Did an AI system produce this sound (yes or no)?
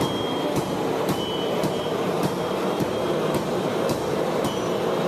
yes